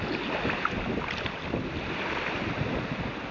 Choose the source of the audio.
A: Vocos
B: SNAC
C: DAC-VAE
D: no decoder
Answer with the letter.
D